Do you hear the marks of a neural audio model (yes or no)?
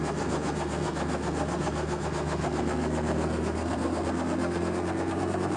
yes